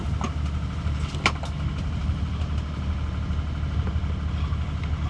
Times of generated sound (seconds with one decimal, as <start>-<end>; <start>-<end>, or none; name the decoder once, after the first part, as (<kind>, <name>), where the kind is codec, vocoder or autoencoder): none